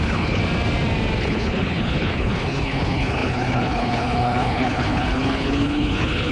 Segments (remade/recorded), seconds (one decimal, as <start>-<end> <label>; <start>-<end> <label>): 0.0-0.4 remade; 0.4-1.2 recorded; 1.2-6.3 remade

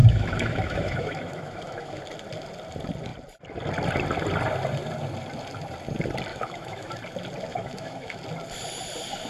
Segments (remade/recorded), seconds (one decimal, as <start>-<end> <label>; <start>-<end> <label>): 0.0-2.0 remade; 2.0-6.3 recorded; 6.3-6.9 remade; 6.9-7.5 recorded; 7.5-8.2 remade; 8.2-9.3 recorded

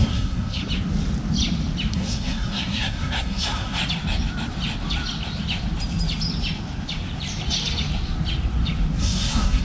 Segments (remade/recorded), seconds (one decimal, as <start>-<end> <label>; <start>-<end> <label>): 0.0-0.6 remade; 0.6-1.9 recorded; 1.9-3.8 remade; 3.8-9.0 recorded; 9.0-9.6 remade

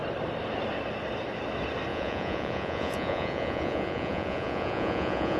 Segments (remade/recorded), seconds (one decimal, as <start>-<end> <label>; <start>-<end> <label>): 0.0-1.9 recorded; 1.9-5.4 remade